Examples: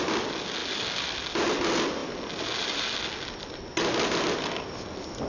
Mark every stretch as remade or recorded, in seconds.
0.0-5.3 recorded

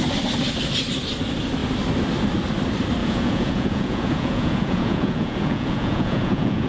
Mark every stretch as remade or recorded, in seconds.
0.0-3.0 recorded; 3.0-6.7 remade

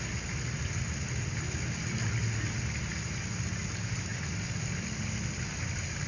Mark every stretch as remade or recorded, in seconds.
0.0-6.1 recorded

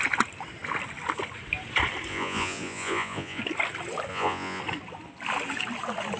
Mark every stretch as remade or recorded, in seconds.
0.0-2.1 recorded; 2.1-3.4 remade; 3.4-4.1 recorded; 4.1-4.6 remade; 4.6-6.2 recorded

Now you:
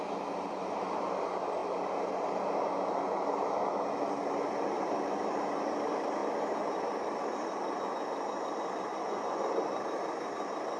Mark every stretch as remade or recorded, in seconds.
0.0-8.9 recorded; 8.9-9.4 remade; 9.4-10.8 recorded

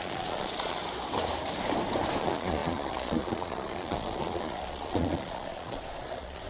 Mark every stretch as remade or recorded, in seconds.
0.0-0.8 remade; 0.8-2.2 recorded; 2.2-6.5 remade

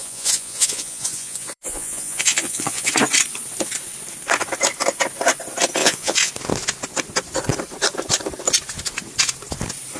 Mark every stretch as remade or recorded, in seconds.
0.0-2.9 remade; 2.9-5.8 recorded; 5.8-6.3 remade; 6.3-10.0 recorded

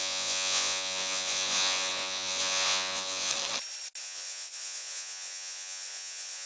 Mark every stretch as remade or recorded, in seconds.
0.0-3.3 remade; 3.3-4.0 recorded; 4.0-6.5 remade